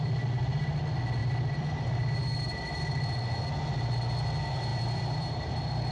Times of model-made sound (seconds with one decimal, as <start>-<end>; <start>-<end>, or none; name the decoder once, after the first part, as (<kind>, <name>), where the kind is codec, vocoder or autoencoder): 1.2-2.8 (vocoder, BigVGAN v2); 4.7-5.5